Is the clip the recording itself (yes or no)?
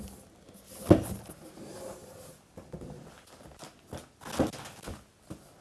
yes